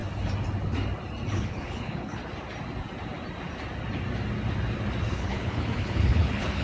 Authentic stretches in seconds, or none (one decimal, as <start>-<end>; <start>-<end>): 0.0-1.3; 2.2-5.1